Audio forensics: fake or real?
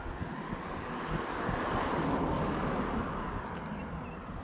real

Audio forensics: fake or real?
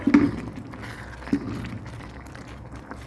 real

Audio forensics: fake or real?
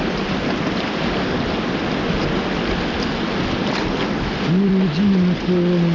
real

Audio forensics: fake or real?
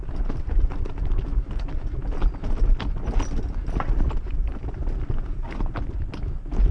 real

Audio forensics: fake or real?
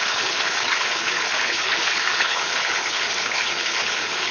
fake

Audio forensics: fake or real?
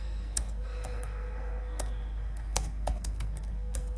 fake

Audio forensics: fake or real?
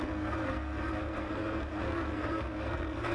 fake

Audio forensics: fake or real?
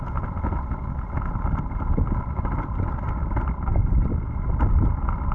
real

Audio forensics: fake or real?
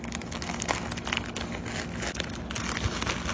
real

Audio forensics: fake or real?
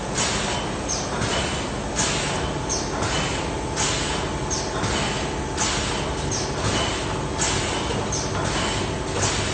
real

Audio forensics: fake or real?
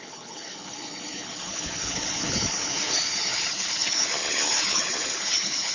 fake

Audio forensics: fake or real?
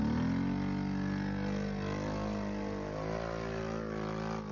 real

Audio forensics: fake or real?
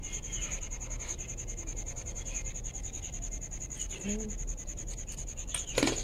real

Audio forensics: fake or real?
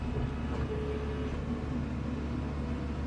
real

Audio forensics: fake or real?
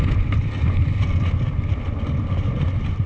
real